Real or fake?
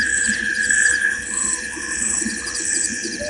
fake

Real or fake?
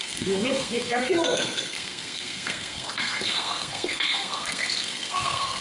fake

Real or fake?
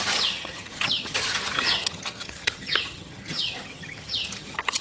fake